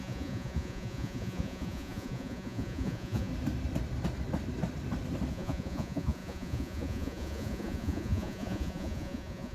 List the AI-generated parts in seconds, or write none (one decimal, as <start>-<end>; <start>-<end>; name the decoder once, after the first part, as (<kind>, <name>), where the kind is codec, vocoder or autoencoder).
0.0-3.3 (vocoder, Vocos); 5.3-9.5